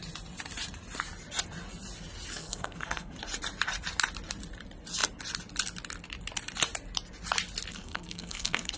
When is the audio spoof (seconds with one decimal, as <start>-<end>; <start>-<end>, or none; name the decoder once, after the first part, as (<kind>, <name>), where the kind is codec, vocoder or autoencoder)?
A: 2.3-3.2 (codec, SNAC); 7.7-8.8